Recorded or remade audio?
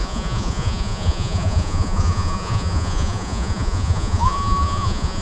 remade